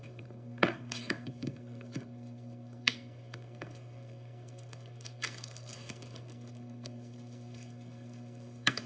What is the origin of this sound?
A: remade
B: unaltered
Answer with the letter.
A